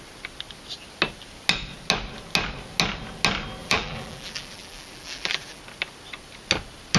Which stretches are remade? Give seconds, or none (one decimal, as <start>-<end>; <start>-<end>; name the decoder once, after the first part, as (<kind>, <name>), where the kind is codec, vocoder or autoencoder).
3.6-5.6 (vocoder, BigVGAN v2)